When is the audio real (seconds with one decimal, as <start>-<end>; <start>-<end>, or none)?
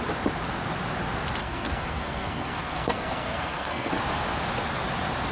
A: 0.0-1.4; 3.9-5.3